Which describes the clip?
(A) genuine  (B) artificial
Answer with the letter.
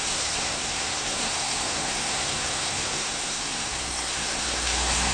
B